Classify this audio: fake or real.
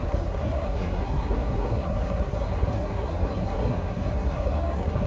fake